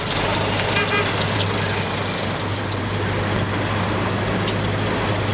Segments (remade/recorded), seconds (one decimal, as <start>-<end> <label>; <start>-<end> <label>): 0.0-5.3 recorded